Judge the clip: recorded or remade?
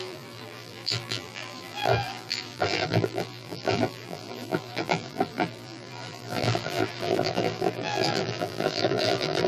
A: remade